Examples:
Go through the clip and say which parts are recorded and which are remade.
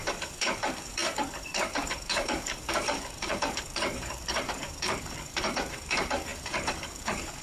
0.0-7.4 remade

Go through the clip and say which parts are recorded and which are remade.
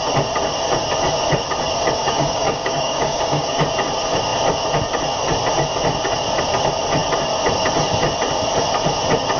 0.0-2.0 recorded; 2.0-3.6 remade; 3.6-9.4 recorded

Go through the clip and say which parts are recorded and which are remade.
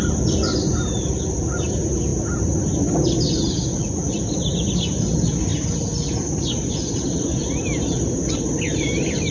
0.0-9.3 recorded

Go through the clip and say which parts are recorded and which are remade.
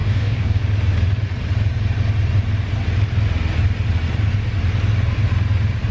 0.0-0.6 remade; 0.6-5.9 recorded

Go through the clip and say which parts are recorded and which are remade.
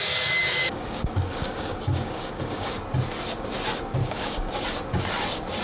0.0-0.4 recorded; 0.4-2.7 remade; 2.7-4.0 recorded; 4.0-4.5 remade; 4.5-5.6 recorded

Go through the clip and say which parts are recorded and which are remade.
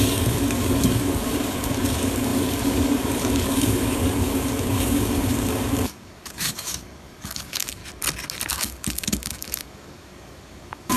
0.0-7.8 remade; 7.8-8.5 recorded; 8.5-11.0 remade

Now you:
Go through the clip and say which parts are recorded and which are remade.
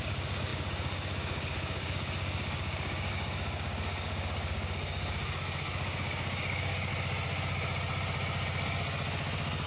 0.0-6.9 remade; 6.9-9.7 recorded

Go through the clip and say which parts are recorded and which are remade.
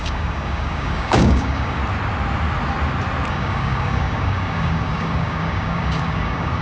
0.0-1.8 remade; 1.8-3.3 recorded; 3.3-6.6 remade